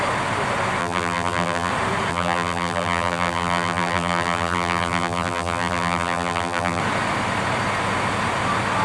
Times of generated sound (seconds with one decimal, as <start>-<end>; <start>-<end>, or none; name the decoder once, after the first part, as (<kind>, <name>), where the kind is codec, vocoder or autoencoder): 0.8-1.7 (vocoder, BigVGAN v2); 2.1-6.8